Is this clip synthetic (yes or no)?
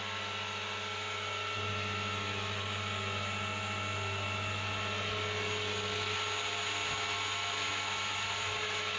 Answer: no